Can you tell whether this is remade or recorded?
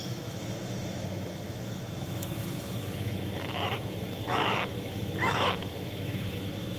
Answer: remade